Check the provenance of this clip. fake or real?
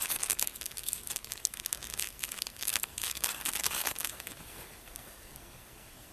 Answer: fake